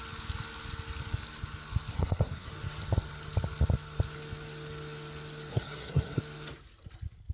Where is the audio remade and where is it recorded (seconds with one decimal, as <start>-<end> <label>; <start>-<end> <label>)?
0.0-1.9 recorded; 1.9-2.5 remade; 2.5-5.5 recorded; 5.5-6.2 remade; 6.2-7.3 recorded